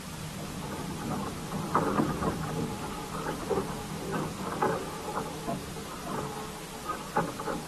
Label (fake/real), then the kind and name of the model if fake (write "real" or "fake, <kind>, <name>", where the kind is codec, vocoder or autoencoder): real